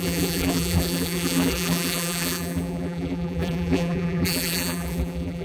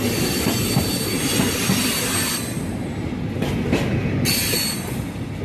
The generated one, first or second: first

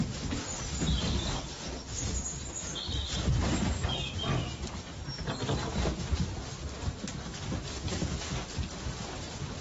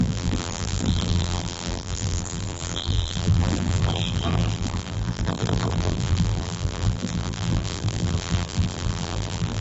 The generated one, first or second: second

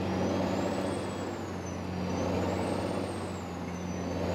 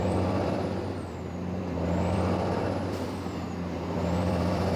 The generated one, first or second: second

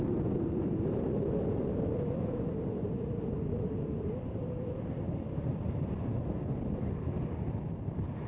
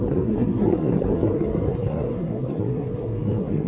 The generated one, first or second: second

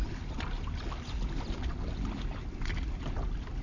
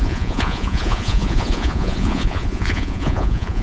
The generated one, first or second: second